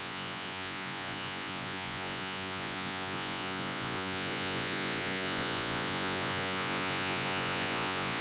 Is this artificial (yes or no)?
yes